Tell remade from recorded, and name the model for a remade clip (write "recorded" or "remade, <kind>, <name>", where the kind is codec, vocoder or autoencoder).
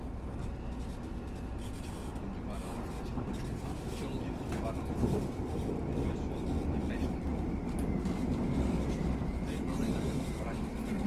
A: recorded